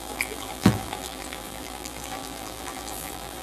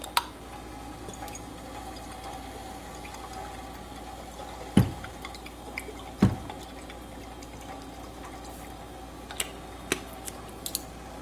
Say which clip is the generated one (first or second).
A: first